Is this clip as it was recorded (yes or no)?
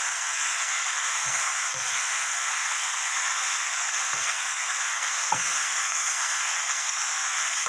no